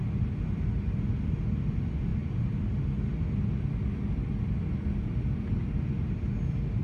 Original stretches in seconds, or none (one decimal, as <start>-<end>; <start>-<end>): 0.0-6.8